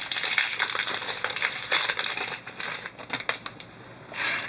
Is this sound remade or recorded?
recorded